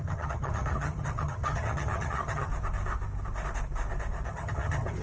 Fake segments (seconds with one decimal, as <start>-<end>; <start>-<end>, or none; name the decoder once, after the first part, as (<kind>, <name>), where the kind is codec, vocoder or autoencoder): 0.0-2.5 (vocoder, HiFi-GAN); 4.3-5.0